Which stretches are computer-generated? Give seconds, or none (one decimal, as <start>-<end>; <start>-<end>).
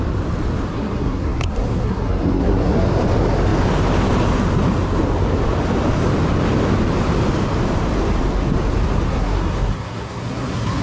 0.7-3.0; 9.1-10.8